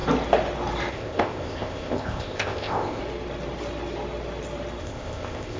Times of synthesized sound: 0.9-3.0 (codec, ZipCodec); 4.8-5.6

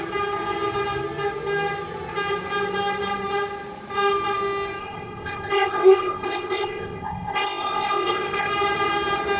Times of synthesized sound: 4.8-8.5 (codec, ZipCodec)

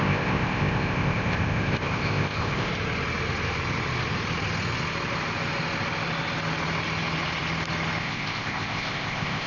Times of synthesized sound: 0.0-2.7 (codec, ZipCodec); 8.0-9.5

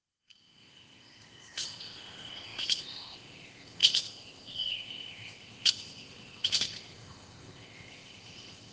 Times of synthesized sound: 0.0-8.7 (codec, ZipCodec)

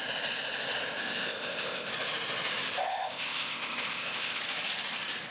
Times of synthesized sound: 1.0-1.9 (codec, ZipCodec); 2.8-4.4